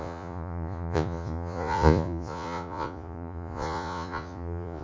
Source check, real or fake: fake